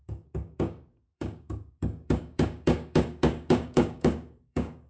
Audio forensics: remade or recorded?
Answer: remade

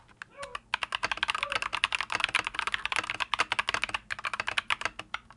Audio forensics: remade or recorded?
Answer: recorded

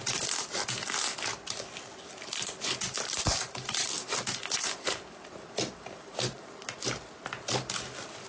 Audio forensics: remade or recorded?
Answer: recorded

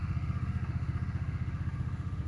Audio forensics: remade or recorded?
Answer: remade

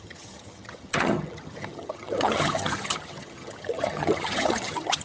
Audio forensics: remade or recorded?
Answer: remade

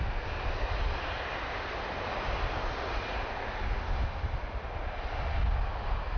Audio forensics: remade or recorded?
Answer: recorded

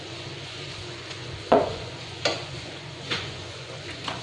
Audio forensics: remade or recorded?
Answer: remade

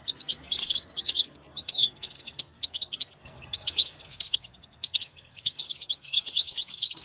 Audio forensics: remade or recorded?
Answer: remade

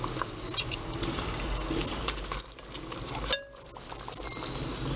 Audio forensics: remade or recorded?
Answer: recorded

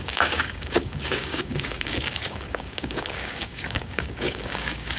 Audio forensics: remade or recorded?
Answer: remade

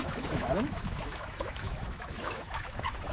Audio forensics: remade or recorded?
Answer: remade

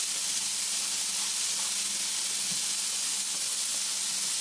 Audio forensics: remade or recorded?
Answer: recorded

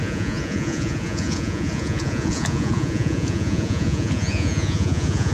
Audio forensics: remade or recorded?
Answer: remade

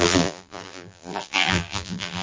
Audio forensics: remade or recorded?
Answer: remade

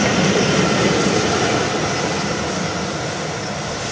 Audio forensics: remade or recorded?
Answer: recorded